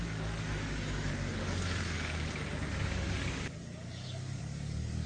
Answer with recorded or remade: remade